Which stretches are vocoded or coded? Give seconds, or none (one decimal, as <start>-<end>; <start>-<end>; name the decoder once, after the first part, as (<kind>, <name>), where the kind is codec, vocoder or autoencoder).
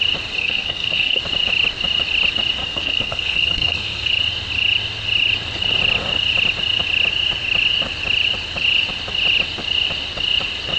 0.4-1.2 (codec, SNAC); 2.6-4.1